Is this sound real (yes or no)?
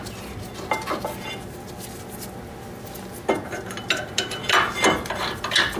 yes